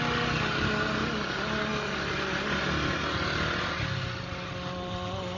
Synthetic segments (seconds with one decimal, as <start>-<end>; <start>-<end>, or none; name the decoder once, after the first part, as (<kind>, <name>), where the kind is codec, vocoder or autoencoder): none